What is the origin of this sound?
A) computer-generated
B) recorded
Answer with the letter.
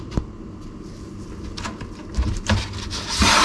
B